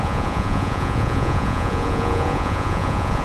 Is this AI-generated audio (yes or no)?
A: yes